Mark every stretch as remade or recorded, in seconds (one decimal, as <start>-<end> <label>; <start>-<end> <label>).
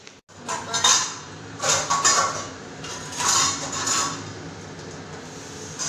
0.0-0.9 recorded; 0.9-4.4 remade; 4.4-5.9 recorded